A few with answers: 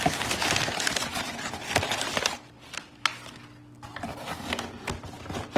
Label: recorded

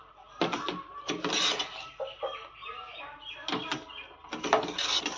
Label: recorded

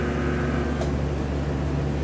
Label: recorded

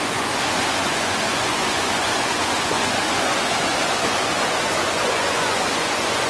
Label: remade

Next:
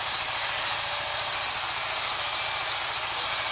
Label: recorded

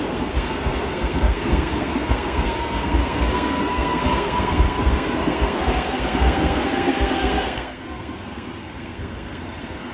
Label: remade